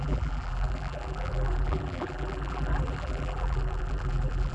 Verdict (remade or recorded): remade